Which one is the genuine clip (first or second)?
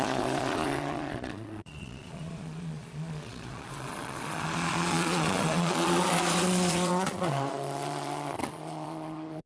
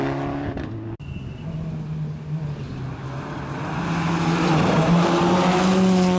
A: second